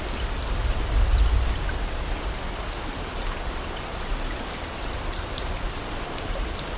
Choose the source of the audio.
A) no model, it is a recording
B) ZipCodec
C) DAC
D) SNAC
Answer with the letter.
A